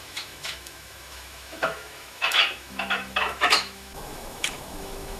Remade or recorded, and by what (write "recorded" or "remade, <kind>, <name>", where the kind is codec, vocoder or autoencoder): remade, autoencoder, DAC-VAE